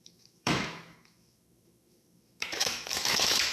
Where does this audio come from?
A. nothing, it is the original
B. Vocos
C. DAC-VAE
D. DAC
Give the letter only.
C